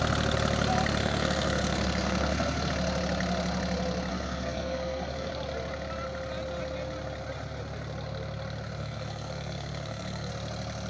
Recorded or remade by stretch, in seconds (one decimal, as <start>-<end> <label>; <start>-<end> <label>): 0.0-1.0 recorded; 1.0-2.7 remade; 2.7-4.1 recorded; 4.1-5.3 remade; 5.3-8.8 recorded; 8.8-10.3 remade; 10.3-10.9 recorded